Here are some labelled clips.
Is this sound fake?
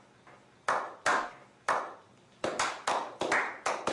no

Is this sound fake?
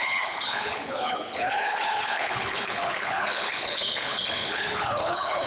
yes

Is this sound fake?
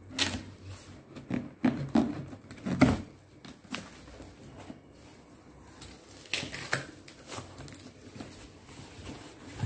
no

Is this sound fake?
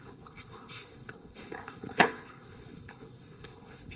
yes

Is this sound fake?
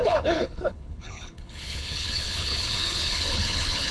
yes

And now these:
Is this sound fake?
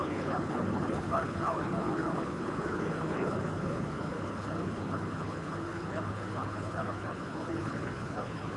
yes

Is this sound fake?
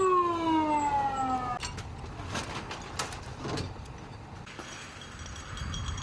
no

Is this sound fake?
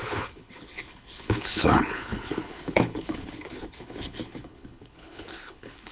yes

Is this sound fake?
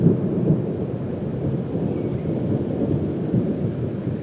no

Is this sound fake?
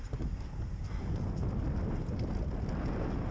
no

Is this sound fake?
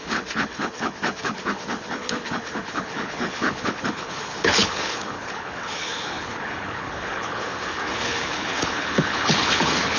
yes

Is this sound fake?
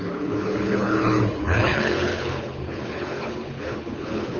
yes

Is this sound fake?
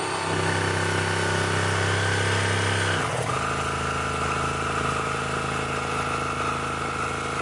no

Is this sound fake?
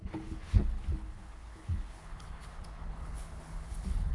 yes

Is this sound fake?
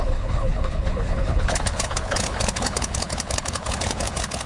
yes